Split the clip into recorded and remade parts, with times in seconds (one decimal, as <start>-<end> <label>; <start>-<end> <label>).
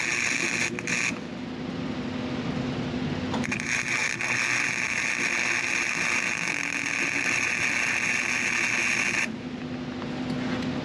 0.0-10.8 recorded